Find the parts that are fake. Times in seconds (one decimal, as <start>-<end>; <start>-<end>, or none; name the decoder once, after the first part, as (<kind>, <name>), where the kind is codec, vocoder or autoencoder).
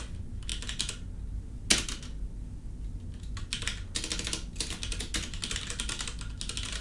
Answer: none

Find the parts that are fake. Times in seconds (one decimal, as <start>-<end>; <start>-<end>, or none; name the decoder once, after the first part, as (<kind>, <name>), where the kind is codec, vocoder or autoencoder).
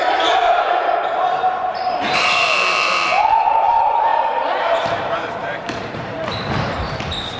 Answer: 0.0-7.4 (vocoder, BigVGAN v2)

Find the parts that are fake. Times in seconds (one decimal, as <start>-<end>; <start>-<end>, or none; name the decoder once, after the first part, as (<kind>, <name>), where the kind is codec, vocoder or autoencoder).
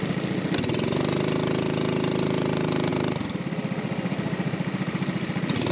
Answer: 2.9-5.7 (vocoder, BigVGAN v2)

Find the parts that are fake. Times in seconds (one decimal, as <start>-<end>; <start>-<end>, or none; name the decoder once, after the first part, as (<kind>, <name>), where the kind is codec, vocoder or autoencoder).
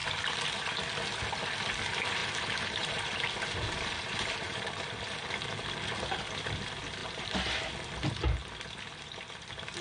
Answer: 2.2-4.6 (vocoder, BigVGAN v2); 7.0-7.7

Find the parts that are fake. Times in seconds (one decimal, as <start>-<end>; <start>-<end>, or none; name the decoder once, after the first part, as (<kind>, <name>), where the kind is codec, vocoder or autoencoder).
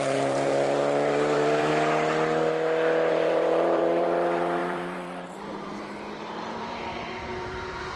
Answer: 0.0-1.7 (vocoder, BigVGAN v2); 3.1-8.0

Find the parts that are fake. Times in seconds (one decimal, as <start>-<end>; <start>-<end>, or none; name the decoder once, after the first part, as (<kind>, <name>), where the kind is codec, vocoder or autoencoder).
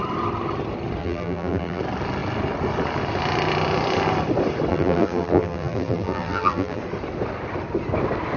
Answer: 1.0-1.8 (vocoder, BigVGAN v2); 4.7-6.8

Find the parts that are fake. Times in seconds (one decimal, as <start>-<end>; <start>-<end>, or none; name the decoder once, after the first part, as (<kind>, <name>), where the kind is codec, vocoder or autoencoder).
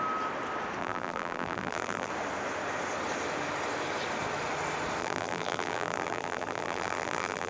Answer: 0.8-2.1 (vocoder, BigVGAN v2); 5.0-7.5